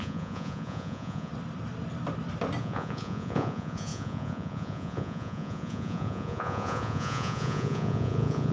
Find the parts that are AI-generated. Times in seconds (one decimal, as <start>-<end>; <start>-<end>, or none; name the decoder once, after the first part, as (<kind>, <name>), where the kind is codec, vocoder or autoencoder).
0.0-1.3 (vocoder, Vocos); 2.6-8.5